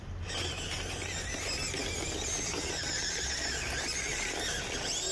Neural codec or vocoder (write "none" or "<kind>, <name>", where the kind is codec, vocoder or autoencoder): none